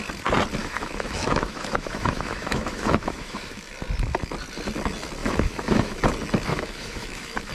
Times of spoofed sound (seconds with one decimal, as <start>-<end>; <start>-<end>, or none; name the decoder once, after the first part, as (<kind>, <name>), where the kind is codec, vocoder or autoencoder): 0.6-3.7 (autoencoder, DAC-VAE); 5.2-6.0; 6.5-7.5